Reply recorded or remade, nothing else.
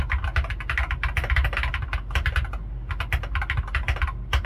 recorded